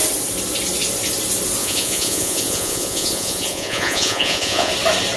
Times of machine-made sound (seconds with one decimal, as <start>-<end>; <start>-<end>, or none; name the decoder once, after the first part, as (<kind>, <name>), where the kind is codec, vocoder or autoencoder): 1.6-4.7 (vocoder, Vocos)